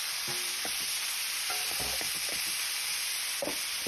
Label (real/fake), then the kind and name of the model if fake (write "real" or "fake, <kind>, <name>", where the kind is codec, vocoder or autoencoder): real